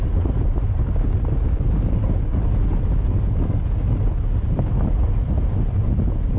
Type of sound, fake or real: real